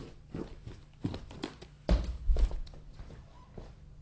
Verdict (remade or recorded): recorded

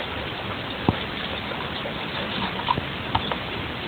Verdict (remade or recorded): recorded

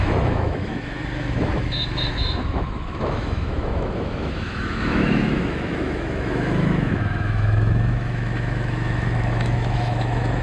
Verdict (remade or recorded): remade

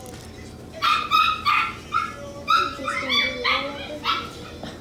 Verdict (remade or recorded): recorded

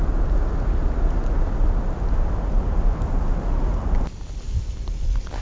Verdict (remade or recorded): recorded